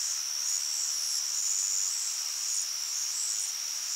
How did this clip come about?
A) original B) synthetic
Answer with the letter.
A